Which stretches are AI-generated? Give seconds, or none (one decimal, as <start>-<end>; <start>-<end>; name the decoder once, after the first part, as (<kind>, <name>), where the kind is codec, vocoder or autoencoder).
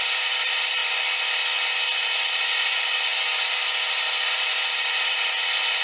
0.0-0.8 (vocoder, BigVGAN v2); 2.0-5.8